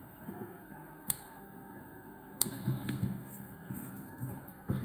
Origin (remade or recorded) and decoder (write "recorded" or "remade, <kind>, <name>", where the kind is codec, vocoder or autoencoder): remade, codec, SNAC